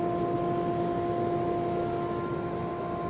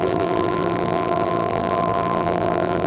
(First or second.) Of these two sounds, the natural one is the first